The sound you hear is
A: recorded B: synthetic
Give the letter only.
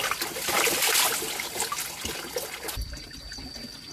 A